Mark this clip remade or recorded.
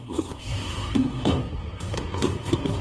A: remade